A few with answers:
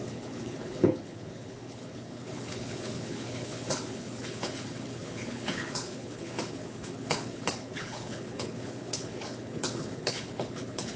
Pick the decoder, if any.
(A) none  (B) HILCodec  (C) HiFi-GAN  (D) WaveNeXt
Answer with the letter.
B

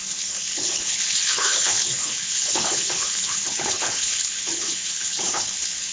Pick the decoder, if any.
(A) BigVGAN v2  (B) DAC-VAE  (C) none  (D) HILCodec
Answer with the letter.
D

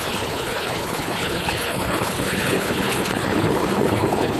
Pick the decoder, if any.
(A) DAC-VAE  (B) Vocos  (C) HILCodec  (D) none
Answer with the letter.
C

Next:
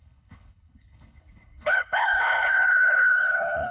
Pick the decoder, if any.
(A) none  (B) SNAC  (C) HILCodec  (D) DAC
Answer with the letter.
C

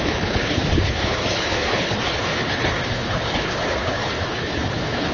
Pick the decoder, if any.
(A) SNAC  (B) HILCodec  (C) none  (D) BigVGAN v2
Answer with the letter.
B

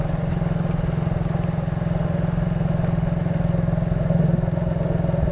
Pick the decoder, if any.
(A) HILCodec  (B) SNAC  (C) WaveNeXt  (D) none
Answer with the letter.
D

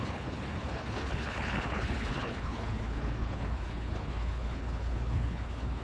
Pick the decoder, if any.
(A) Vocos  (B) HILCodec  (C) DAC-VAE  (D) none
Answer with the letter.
B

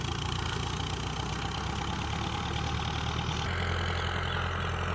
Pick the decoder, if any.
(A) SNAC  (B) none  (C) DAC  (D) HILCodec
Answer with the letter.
B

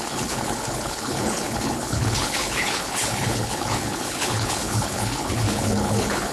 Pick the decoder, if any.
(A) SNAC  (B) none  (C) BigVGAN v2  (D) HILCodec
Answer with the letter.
D